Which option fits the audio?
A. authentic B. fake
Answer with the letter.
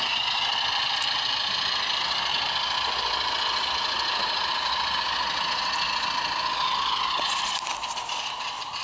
A